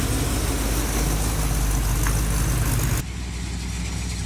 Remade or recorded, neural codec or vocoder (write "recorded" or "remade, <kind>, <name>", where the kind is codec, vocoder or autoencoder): recorded